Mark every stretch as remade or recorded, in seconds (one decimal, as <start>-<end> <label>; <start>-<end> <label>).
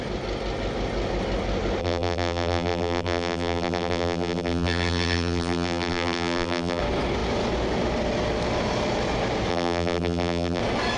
0.0-1.8 recorded; 1.8-6.8 remade; 6.8-9.5 recorded; 9.5-10.6 remade; 10.6-11.0 recorded